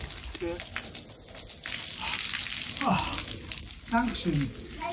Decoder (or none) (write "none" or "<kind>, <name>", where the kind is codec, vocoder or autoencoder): none